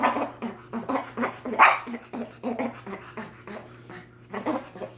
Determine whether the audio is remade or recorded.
recorded